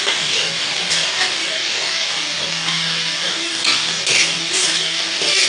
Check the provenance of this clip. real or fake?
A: fake